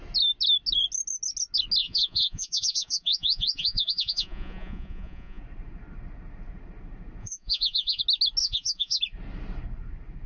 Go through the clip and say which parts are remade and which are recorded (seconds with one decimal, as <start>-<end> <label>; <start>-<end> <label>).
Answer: 0.0-1.8 recorded; 1.8-5.4 remade; 5.4-7.2 recorded; 7.2-8.0 remade; 8.0-8.4 recorded; 8.4-9.0 remade; 9.0-10.3 recorded